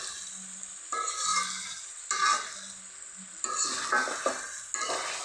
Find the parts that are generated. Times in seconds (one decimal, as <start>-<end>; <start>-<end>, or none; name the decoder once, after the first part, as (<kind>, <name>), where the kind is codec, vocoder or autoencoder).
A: none